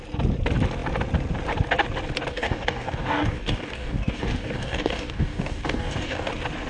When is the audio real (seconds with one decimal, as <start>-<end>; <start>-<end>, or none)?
0.0-2.3; 6.3-6.7